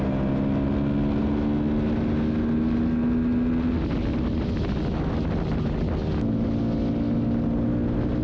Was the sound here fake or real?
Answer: real